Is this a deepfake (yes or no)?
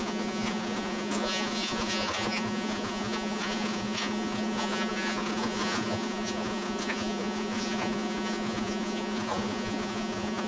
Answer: yes